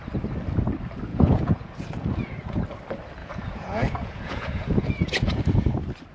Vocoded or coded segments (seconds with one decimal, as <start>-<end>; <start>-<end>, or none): 1.1-2.6; 3.2-5.4